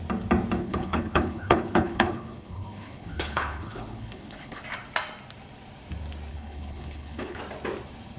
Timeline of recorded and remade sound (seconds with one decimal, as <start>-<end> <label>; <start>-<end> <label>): 0.0-0.6 recorded; 0.6-4.6 remade; 4.6-6.3 recorded; 6.3-7.4 remade; 7.4-8.2 recorded

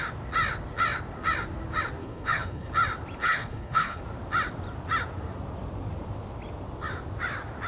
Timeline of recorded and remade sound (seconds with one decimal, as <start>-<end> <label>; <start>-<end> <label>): 0.0-2.0 recorded; 2.0-2.7 remade; 2.7-3.2 recorded; 3.2-4.0 remade; 4.0-7.7 recorded

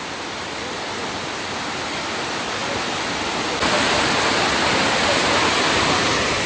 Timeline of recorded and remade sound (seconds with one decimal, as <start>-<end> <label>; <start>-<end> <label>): 0.0-6.5 recorded

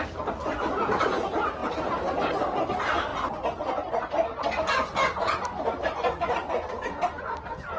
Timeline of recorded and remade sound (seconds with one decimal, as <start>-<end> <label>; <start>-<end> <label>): 0.0-7.8 recorded

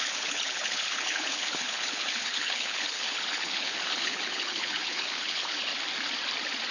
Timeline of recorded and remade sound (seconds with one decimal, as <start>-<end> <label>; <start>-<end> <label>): 0.0-5.7 remade; 5.7-6.7 recorded

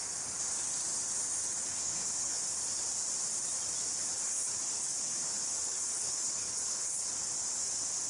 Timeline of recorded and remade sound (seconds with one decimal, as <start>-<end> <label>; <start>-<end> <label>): 0.0-1.7 recorded; 1.7-2.4 remade; 2.4-4.1 recorded; 4.1-7.1 remade; 7.1-8.1 recorded